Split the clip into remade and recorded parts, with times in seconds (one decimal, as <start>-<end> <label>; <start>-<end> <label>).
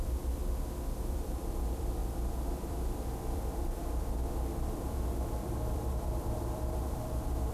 0.0-0.4 remade; 0.4-1.0 recorded; 1.0-7.5 remade